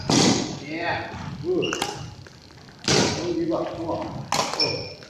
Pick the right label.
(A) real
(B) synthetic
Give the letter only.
A